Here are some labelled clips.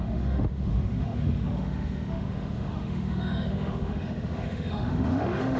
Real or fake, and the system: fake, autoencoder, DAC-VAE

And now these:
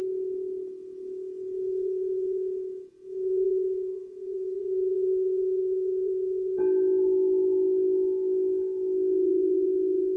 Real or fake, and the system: fake, vocoder, Vocos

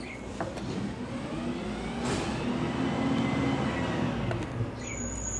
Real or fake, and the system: real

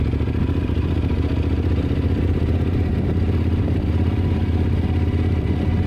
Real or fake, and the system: fake, vocoder, BigVGAN v2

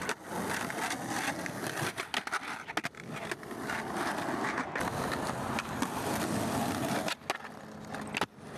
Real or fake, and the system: real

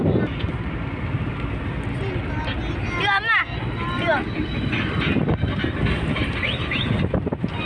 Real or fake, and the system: real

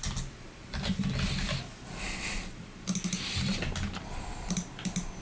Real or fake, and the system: real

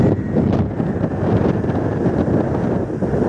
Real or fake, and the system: fake, vocoder, BigVGAN v2